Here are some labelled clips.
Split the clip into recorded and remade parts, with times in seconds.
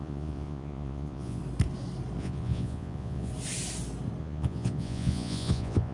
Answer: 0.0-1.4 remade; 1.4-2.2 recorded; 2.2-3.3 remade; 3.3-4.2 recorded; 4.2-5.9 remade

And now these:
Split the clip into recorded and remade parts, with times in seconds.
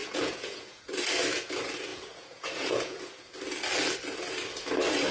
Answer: 0.0-1.0 remade; 1.0-1.9 recorded; 1.9-3.0 remade; 3.0-5.1 recorded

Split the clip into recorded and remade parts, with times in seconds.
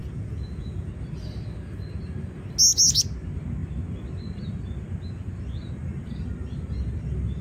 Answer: 0.0-0.9 remade; 0.9-7.4 recorded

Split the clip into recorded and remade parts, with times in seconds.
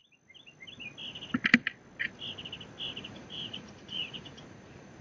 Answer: 0.0-3.0 recorded; 3.0-5.0 remade